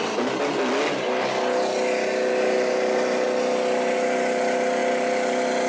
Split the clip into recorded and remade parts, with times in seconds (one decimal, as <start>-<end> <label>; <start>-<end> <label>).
0.0-5.7 recorded